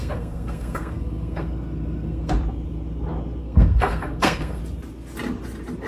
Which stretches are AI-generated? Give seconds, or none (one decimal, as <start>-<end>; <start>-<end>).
0.0-2.3; 3.4-4.6